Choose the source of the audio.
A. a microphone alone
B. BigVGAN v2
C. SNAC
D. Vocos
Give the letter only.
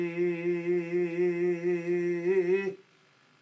A